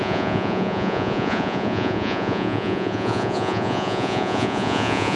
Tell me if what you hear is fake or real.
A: fake